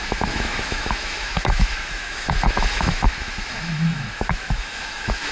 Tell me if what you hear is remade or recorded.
remade